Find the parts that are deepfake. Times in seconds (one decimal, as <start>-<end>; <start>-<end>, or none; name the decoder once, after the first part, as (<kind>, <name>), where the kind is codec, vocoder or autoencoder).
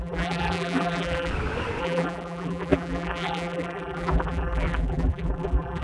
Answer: 0.0-1.3 (vocoder, BigVGAN v2); 1.8-5.8